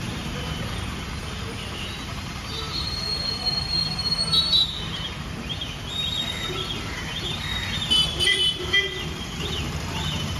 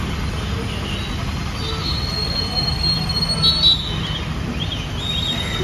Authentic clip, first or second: second